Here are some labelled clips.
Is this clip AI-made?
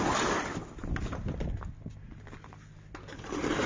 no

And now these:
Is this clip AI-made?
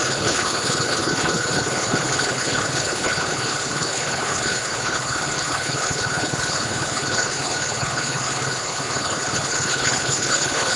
yes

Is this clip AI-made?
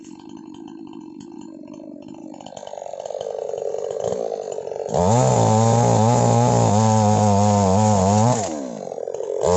no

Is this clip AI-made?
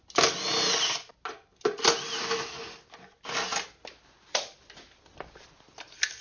no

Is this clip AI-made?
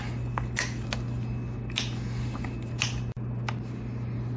no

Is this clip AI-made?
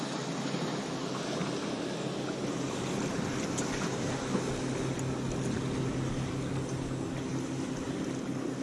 no